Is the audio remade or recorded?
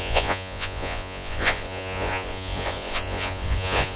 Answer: remade